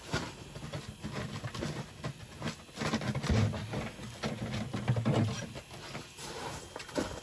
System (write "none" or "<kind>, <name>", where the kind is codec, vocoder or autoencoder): none